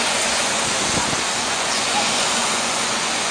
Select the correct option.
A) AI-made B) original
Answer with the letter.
A